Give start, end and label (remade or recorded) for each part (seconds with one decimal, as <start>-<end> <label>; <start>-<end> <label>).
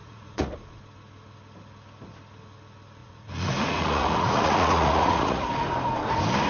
0.0-0.8 remade; 0.8-3.0 recorded; 3.0-5.5 remade; 5.5-6.5 recorded